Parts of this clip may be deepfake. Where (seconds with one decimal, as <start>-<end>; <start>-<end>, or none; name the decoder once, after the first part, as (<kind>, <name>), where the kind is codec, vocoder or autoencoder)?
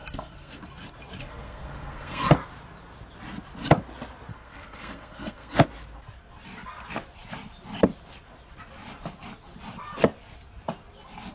0.0-0.6 (codec, SNAC); 1.2-2.3; 4.3-5.7